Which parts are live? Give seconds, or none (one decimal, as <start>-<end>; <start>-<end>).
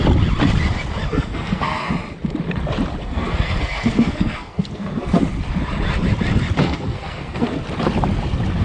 0.0-1.1; 1.9-3.0; 5.2-6.6; 7.6-8.6